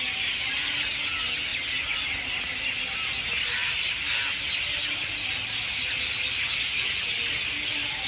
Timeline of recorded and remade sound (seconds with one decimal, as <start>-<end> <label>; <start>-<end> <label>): 0.0-8.1 recorded